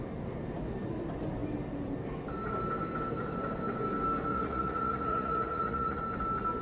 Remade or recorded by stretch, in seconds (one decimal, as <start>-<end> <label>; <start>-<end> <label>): 0.0-4.3 recorded; 4.3-6.0 remade; 6.0-6.6 recorded